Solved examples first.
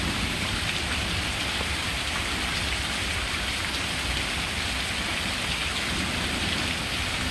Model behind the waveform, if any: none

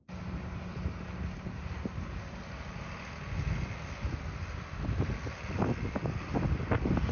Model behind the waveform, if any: none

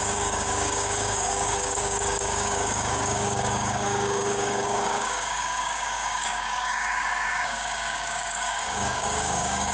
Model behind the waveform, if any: codec, DAC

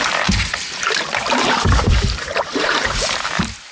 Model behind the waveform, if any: vocoder, BigVGAN v2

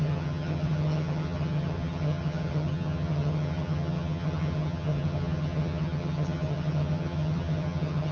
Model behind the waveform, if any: vocoder, HiFi-GAN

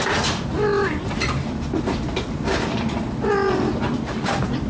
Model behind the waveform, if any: none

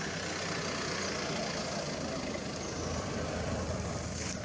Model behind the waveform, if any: none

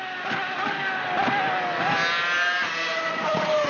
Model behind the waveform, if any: none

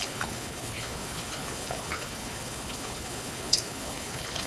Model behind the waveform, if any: codec, HILCodec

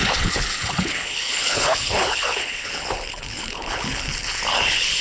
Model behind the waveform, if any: codec, HILCodec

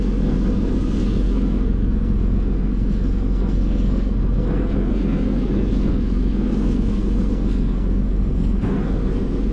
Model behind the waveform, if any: codec, SNAC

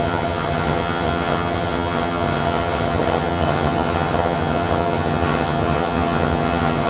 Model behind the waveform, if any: vocoder, HiFi-GAN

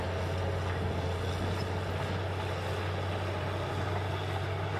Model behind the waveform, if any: none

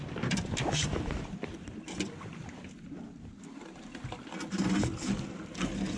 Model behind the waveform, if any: none